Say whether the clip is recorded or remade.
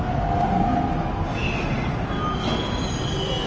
recorded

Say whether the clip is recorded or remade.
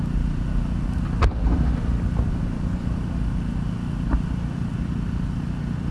recorded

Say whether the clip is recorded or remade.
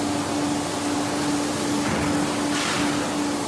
recorded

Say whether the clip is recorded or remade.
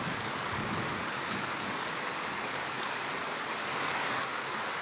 remade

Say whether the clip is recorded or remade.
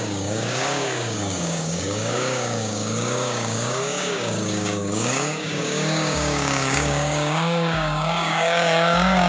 remade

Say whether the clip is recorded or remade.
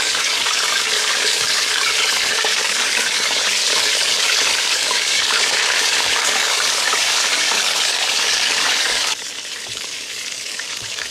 remade